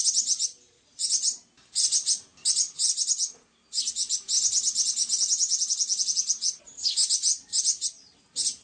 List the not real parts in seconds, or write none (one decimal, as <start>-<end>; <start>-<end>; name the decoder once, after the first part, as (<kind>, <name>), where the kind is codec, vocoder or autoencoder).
none